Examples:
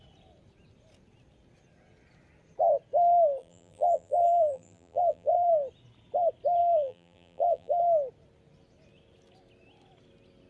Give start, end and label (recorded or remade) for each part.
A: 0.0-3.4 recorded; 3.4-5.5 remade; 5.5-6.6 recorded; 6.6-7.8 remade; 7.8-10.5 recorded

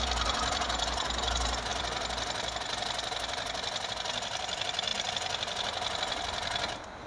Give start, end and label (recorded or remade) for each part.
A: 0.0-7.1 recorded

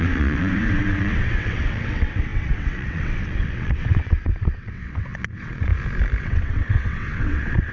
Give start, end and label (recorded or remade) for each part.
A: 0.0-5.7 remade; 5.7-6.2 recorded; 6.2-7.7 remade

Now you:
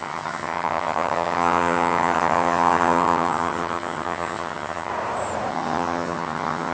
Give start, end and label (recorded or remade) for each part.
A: 0.0-4.9 remade; 4.9-5.5 recorded; 5.5-6.7 remade